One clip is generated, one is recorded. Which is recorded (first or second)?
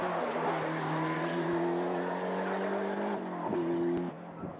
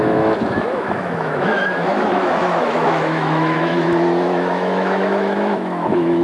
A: first